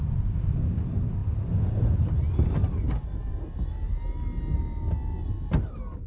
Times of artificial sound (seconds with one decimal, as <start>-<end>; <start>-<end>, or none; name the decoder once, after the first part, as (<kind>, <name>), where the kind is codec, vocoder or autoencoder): none